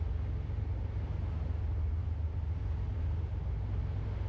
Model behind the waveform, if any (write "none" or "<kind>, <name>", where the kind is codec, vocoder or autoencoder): none